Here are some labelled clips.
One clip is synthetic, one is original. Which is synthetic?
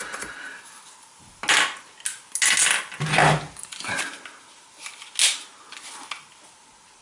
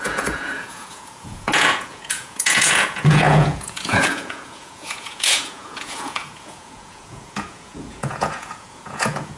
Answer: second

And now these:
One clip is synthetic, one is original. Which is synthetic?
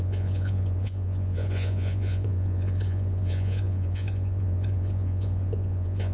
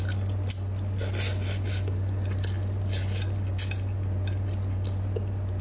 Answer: first